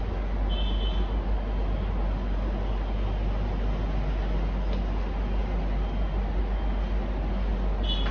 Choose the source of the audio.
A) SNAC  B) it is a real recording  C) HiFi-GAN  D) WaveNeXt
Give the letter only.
B